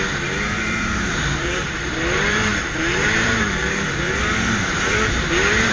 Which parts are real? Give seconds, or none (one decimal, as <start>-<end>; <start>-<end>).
none